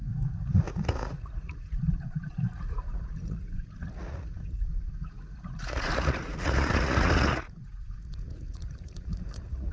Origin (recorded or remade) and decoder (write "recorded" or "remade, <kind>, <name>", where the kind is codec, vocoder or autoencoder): remade, vocoder, Vocos